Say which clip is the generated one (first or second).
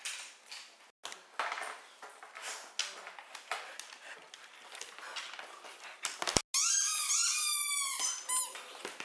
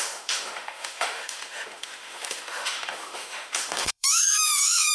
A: second